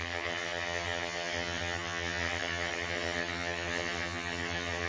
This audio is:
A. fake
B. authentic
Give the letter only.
A